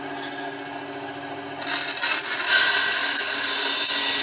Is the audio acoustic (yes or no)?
yes